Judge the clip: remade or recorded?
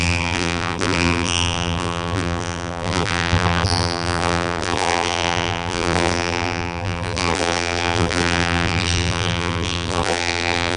remade